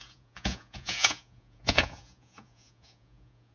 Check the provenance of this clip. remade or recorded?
remade